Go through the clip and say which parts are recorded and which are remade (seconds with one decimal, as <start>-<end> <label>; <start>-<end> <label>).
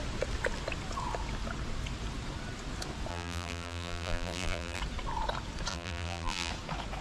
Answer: 0.0-3.1 recorded; 3.1-4.8 remade; 4.8-5.7 recorded; 5.7-6.5 remade; 6.5-7.0 recorded